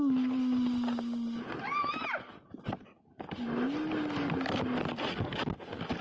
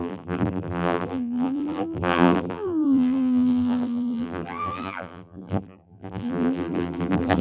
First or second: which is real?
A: first